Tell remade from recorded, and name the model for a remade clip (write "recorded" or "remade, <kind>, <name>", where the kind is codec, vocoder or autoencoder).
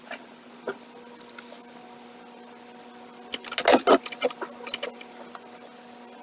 recorded